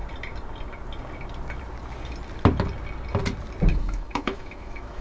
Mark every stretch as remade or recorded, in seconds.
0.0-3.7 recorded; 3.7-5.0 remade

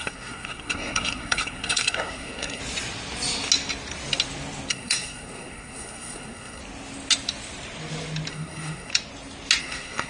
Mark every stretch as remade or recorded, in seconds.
0.0-2.6 remade; 2.6-4.7 recorded; 4.7-6.6 remade; 6.6-8.3 recorded; 8.3-8.9 remade; 8.9-9.6 recorded; 9.6-10.1 remade